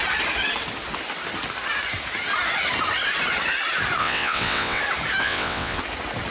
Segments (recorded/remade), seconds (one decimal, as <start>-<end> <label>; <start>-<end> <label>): 0.0-4.0 recorded; 4.0-4.8 remade; 4.8-5.2 recorded; 5.2-5.8 remade; 5.8-6.3 recorded